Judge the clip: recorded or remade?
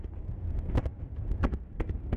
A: recorded